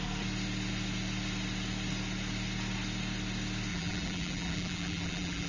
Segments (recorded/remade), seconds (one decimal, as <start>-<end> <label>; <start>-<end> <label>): 0.0-3.7 recorded; 3.7-5.5 remade